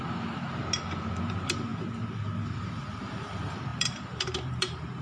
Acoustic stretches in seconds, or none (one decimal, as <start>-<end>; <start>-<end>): 0.6-1.1

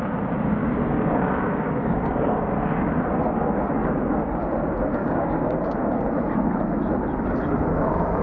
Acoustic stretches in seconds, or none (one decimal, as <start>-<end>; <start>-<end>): 0.0-0.6; 2.5-5.0; 5.7-8.2

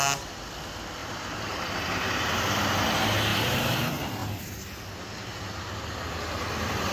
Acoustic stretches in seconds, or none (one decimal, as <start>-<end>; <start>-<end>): 0.0-1.0; 2.7-3.3; 3.8-6.9

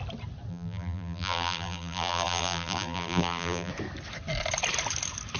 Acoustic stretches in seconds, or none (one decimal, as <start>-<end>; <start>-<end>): 0.0-0.5; 3.7-5.4

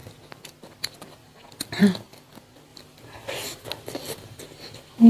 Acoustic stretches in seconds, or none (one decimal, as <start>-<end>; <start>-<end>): 0.0-5.1

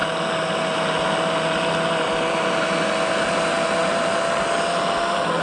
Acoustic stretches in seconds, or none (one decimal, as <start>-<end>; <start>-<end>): 0.0-5.4

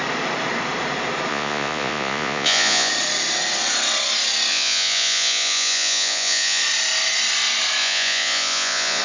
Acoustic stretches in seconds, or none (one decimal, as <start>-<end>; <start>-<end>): 0.0-1.3; 2.9-4.5; 6.6-7.8

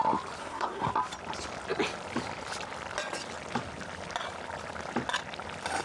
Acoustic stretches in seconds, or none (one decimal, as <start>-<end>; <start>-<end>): 0.0-0.4; 0.9-5.8